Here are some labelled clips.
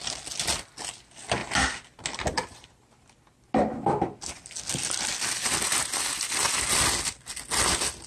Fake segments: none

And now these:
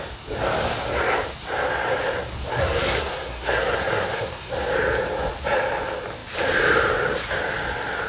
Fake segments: 2.5-4.5